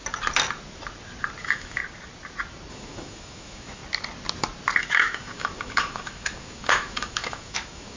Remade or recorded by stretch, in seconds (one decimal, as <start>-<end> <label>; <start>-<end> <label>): 0.0-1.4 recorded; 1.4-1.8 remade; 1.8-2.7 recorded; 2.7-3.8 remade; 3.8-4.8 recorded; 4.8-8.0 remade